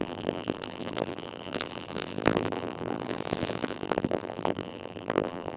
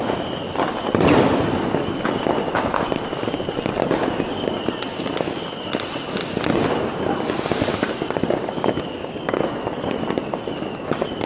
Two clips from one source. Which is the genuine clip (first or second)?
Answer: second